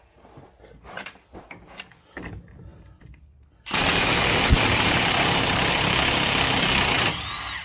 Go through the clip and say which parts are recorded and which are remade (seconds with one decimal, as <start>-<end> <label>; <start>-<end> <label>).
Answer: 0.0-7.6 recorded